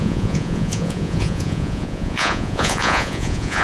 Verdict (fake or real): fake